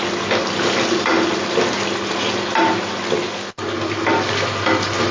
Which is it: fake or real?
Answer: real